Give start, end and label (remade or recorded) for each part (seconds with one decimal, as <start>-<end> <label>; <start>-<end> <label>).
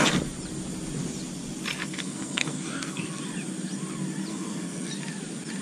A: 0.0-1.8 recorded; 1.8-3.2 remade; 3.2-4.3 recorded; 4.3-4.9 remade; 4.9-5.6 recorded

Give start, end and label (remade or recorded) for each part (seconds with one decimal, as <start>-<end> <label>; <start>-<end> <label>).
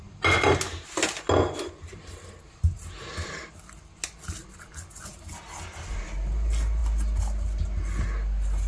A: 0.0-8.7 recorded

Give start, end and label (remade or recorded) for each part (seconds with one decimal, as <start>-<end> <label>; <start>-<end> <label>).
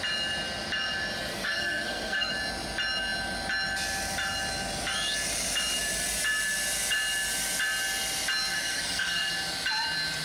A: 0.0-1.3 recorded; 1.3-2.3 remade; 2.3-8.5 recorded; 8.5-9.3 remade; 9.3-10.2 recorded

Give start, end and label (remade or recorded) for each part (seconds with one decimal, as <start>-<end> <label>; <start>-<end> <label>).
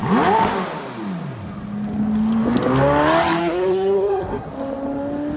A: 0.0-3.4 recorded; 3.4-4.5 remade; 4.5-5.4 recorded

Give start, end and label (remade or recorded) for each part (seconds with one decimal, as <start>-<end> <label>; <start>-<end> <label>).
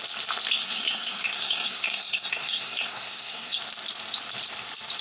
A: 0.0-0.6 recorded; 0.6-3.6 remade; 3.6-5.0 recorded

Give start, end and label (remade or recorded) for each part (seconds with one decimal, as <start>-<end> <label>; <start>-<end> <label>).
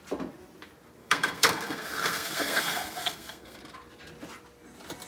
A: 0.0-1.0 recorded; 1.0-3.6 remade; 3.6-5.1 recorded